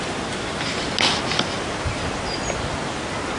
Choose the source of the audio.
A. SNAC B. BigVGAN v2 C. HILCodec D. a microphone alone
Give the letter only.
D